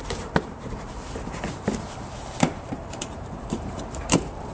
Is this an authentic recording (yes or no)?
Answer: no